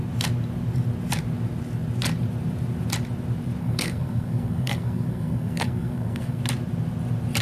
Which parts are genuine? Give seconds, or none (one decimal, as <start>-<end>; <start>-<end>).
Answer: 0.0-3.6; 6.4-7.4